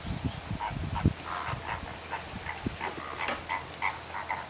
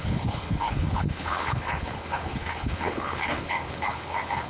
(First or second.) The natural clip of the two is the first